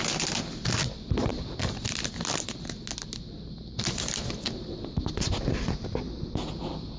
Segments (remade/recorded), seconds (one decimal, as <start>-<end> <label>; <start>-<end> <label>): 0.0-7.0 recorded